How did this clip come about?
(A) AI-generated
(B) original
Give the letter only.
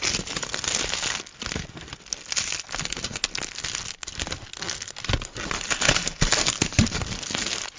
B